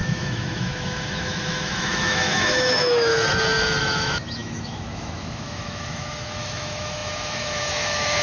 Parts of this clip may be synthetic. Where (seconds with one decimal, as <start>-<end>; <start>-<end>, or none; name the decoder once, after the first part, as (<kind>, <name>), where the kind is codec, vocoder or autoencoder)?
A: 0.0-3.1 (autoencoder, DAC-VAE); 3.8-8.2